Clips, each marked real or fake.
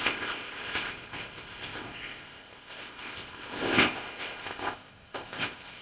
fake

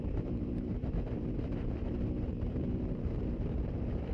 fake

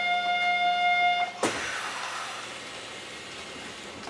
real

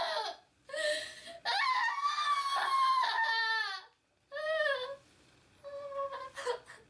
real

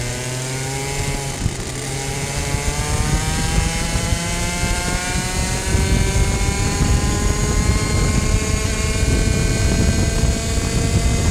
real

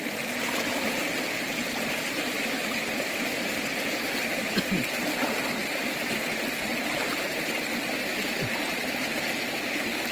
real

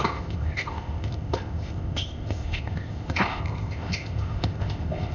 fake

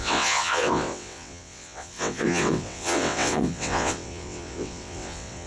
fake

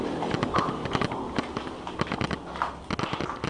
real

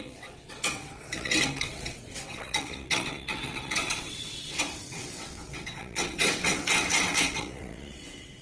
fake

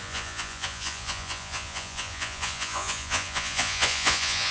fake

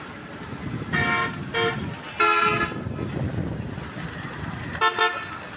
real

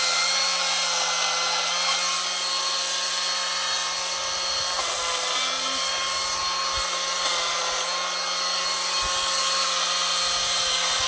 real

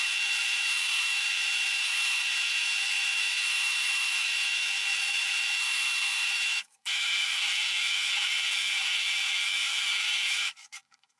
fake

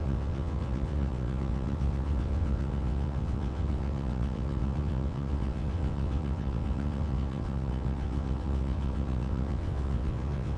fake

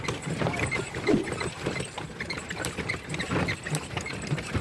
real